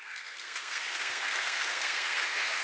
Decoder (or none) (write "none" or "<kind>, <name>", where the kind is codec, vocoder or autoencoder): codec, SNAC